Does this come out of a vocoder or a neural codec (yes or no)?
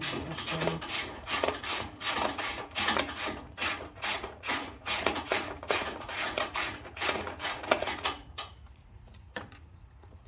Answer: yes